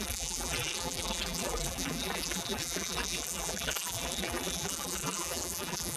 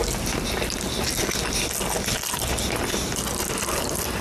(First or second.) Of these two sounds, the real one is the second